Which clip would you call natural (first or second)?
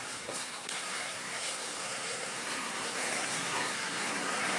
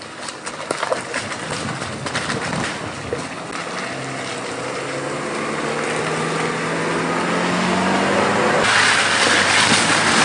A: second